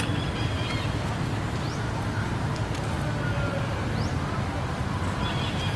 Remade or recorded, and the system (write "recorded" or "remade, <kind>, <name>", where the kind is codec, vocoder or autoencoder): recorded